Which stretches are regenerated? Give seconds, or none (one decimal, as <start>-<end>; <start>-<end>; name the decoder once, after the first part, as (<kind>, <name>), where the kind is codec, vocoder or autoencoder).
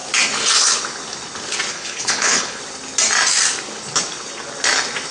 1.7-2.6 (codec, HILCodec)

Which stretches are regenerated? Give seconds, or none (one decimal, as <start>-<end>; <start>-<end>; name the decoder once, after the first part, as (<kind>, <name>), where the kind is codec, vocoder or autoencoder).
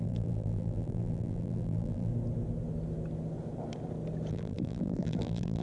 0.0-2.1 (vocoder, BigVGAN v2); 4.3-5.6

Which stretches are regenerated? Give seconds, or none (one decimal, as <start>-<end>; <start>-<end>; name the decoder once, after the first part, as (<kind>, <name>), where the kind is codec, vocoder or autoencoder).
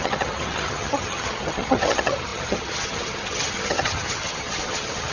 0.0-5.1 (vocoder, HiFi-GAN)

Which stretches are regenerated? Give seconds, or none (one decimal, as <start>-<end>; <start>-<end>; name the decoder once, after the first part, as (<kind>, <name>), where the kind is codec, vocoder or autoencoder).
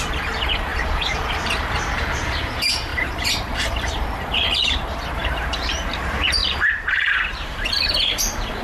0.0-8.6 (vocoder, BigVGAN v2)